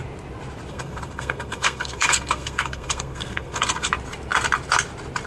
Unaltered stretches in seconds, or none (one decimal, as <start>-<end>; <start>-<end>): 0.0-0.7; 3.9-5.3